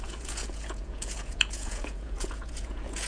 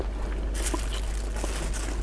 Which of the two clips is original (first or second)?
second